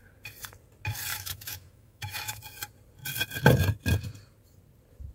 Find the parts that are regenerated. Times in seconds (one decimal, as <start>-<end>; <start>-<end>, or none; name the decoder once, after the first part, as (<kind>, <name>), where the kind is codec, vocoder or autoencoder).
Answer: 1.1-2.4 (autoencoder, DAC-VAE)